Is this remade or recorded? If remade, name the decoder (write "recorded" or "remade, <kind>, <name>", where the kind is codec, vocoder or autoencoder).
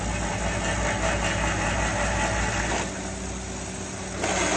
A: recorded